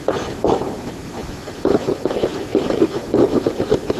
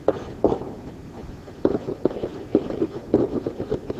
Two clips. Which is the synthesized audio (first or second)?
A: first